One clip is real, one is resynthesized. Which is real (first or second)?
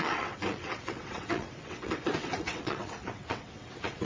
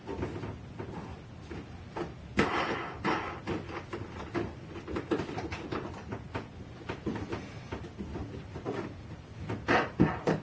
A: second